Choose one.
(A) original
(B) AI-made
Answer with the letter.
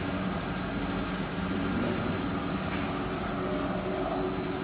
A